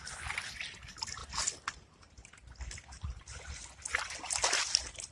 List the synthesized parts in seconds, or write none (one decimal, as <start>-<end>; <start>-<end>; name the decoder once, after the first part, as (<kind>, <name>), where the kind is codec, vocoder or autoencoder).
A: none

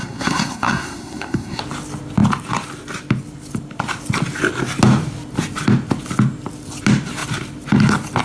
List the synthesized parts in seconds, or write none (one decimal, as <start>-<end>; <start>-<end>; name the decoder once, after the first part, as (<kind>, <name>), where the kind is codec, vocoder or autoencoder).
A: 0.0-1.6 (codec, SNAC)

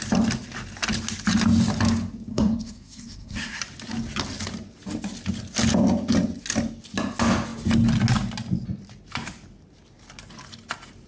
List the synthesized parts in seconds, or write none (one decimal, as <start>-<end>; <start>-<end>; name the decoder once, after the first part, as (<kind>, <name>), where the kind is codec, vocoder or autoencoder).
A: 2.3-3.6 (codec, SNAC)

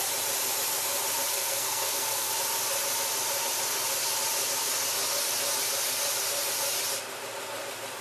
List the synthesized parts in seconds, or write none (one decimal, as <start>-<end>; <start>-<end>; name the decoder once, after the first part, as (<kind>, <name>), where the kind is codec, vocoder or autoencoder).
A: 1.3-2.3 (codec, SNAC)

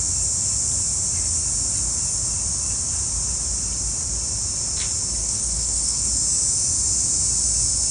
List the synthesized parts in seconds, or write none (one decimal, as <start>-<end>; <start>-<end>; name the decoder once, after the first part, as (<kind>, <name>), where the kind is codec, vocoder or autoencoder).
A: 5.2-6.1 (codec, SNAC)

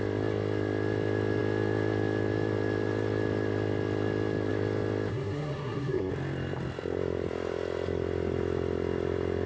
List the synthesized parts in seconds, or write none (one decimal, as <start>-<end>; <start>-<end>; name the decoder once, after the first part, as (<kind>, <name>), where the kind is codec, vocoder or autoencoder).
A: 5.1-6.1 (codec, SNAC)

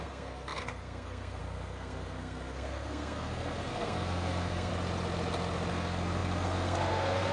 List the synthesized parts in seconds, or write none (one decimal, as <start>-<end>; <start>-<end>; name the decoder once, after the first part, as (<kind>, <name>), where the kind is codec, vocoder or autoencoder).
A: 0.0-4.7 (codec, SNAC); 5.7-7.3

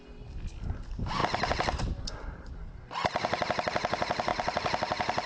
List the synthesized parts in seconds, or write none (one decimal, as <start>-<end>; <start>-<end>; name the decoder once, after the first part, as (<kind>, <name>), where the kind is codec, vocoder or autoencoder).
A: none